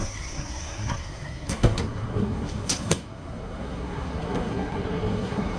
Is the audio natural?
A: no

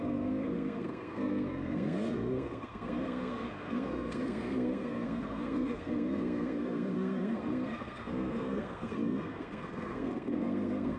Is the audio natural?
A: no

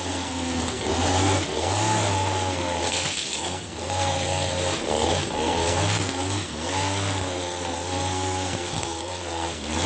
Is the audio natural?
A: no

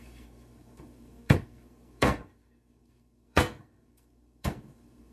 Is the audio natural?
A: no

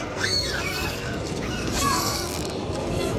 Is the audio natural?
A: no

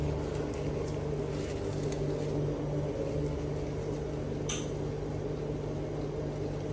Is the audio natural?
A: yes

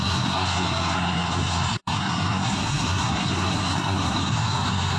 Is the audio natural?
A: no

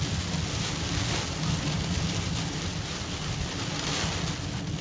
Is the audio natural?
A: yes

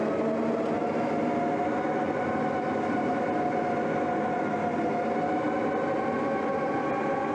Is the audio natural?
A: yes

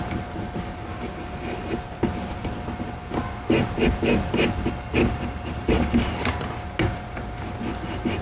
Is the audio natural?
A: yes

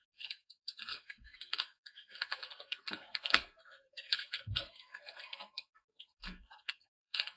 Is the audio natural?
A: no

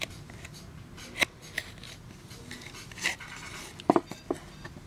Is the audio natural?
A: yes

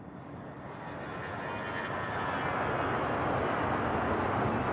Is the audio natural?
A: yes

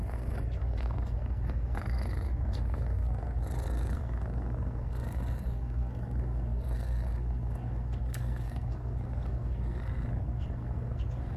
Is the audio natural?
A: no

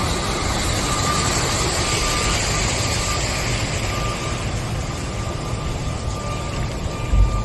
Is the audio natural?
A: yes